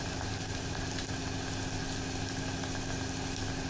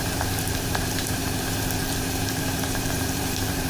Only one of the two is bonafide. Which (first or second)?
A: first